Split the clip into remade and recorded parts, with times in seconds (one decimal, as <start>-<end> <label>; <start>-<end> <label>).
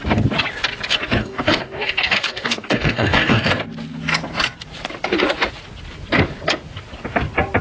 0.0-1.2 recorded; 1.2-3.5 remade; 3.5-7.6 recorded